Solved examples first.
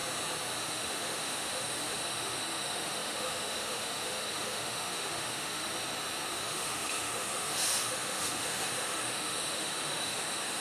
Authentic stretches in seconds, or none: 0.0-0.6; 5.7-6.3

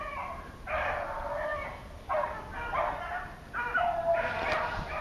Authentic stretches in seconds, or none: 0.0-5.0